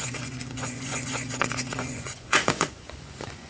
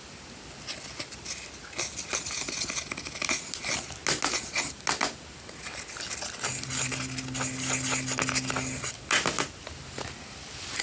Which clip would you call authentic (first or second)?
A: second